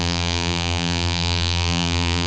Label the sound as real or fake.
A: fake